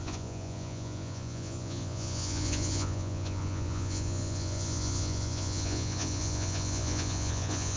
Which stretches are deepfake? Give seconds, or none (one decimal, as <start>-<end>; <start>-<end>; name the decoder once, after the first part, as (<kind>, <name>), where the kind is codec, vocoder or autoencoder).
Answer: 0.0-7.8 (vocoder, Vocos)